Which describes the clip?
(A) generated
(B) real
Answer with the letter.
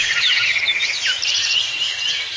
B